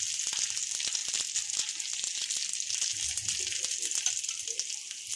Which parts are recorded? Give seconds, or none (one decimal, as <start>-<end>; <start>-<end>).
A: 0.0-5.2